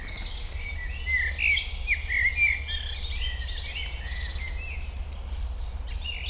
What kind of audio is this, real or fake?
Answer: real